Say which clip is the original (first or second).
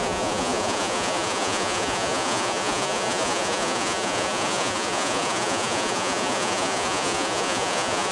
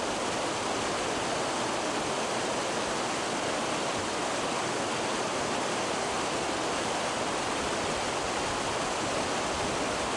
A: second